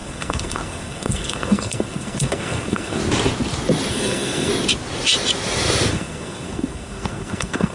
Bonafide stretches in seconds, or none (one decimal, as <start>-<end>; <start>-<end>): 3.0-3.9; 4.5-5.9